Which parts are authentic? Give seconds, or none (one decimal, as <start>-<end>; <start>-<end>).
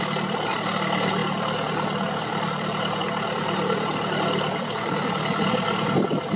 0.0-6.4